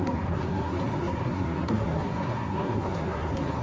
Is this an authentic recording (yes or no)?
no